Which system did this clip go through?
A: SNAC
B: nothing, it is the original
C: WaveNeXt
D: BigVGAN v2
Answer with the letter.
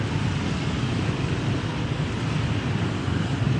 D